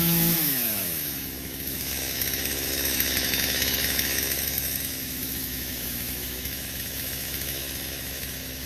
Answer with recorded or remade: remade